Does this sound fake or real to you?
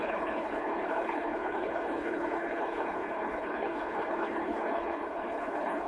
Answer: fake